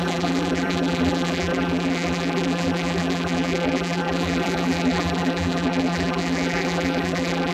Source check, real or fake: fake